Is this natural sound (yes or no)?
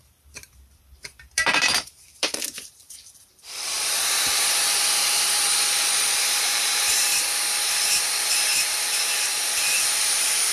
no